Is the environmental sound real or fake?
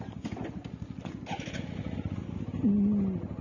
real